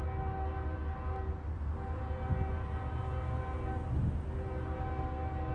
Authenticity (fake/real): real